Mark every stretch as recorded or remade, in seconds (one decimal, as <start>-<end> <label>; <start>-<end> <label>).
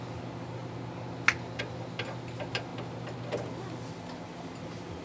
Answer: 0.0-5.0 recorded